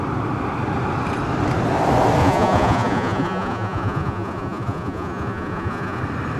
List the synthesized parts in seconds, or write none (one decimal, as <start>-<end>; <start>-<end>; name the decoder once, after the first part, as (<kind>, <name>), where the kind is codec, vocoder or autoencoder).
2.2-6.0 (vocoder, Vocos)